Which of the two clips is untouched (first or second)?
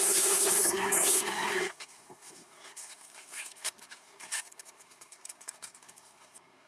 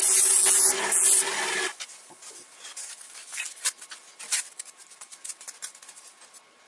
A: second